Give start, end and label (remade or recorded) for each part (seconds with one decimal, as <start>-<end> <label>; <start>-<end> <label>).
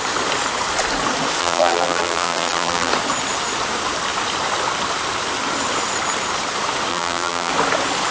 0.0-1.4 recorded; 1.4-2.9 remade; 2.9-6.9 recorded; 6.9-7.5 remade; 7.5-8.1 recorded